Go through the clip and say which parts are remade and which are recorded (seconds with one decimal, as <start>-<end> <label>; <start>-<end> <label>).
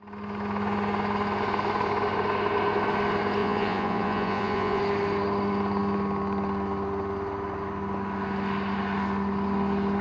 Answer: 0.0-3.4 recorded; 3.4-4.8 remade; 4.8-10.0 recorded